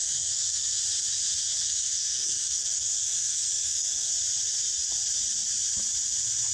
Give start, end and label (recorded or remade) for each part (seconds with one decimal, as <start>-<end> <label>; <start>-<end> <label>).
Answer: 0.0-0.8 remade; 0.8-1.4 recorded; 1.4-4.1 remade; 4.1-6.5 recorded